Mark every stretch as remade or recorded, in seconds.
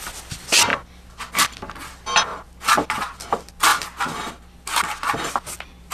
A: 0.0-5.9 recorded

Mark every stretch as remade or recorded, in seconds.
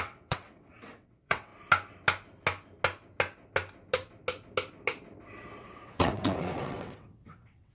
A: 0.0-1.5 remade; 1.5-5.6 recorded; 5.6-7.7 remade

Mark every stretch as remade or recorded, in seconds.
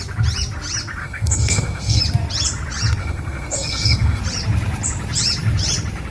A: 0.0-1.0 recorded; 1.0-2.0 remade; 2.0-3.0 recorded; 3.0-4.2 remade; 4.2-6.1 recorded